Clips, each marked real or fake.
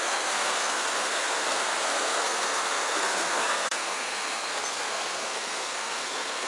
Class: fake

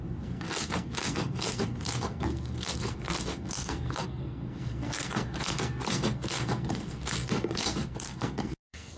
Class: fake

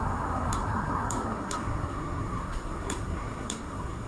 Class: fake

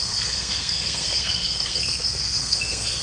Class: fake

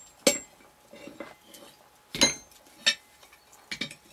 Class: real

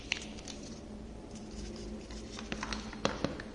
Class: real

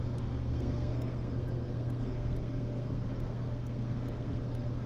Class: fake